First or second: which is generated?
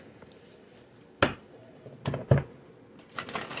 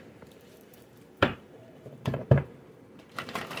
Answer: second